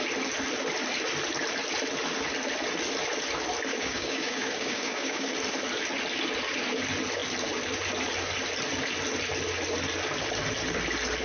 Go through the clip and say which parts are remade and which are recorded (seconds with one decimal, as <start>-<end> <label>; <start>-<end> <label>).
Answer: 0.0-3.7 recorded; 3.7-5.3 remade; 5.3-11.2 recorded